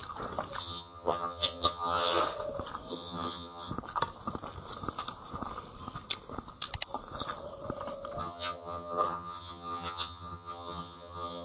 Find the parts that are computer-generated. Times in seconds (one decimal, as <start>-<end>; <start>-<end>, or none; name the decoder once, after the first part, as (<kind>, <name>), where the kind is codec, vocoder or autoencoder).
0.6-2.2 (vocoder, HiFi-GAN); 2.9-3.7; 8.2-11.4